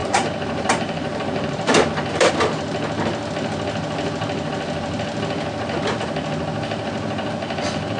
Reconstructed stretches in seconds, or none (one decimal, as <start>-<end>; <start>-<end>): 0.0-2.3